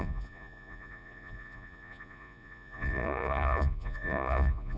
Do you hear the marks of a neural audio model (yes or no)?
yes